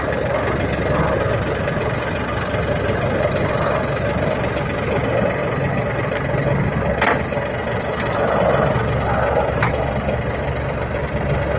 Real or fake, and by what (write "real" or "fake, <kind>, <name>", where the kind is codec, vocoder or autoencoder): real